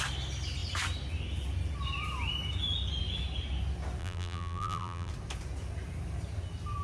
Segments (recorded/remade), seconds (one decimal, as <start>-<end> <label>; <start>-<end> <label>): 0.0-4.0 recorded; 4.0-5.1 remade; 5.1-6.8 recorded